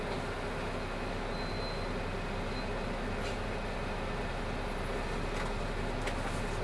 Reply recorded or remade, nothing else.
recorded